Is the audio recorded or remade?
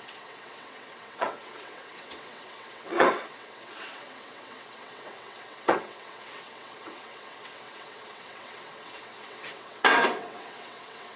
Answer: remade